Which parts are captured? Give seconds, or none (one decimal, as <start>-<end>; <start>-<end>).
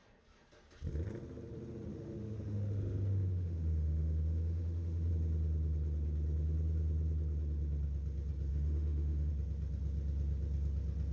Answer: 0.0-1.9; 5.1-8.5; 9.3-11.1